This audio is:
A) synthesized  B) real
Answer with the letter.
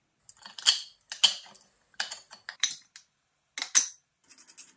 B